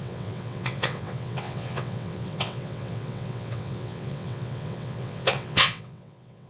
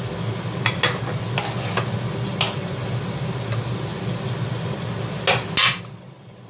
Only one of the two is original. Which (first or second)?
second